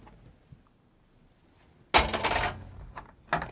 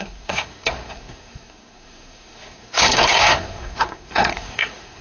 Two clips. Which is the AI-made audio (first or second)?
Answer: second